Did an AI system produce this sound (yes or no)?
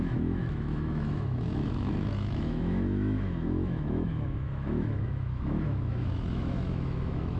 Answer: yes